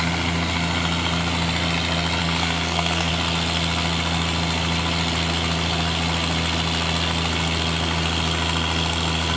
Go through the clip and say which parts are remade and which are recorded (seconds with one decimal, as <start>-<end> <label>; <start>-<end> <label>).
0.0-2.2 recorded; 2.2-3.1 remade; 3.1-9.4 recorded